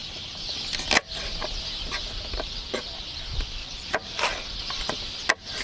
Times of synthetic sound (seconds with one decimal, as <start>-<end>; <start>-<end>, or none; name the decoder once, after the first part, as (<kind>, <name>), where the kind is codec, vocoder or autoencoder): 3.6-4.3 (vocoder, BigVGAN v2)

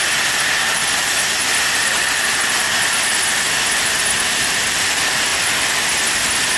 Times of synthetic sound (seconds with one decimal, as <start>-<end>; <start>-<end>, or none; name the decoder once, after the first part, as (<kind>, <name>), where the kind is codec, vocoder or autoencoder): 0.0-6.6 (vocoder, BigVGAN v2)

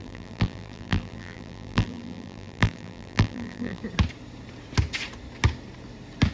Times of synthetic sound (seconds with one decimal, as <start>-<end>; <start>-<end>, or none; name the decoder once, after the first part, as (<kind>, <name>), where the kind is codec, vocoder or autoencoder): 0.0-3.8 (vocoder, BigVGAN v2)

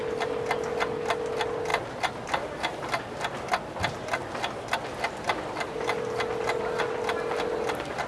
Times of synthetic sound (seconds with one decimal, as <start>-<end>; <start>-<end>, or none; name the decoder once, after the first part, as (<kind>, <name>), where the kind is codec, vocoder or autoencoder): none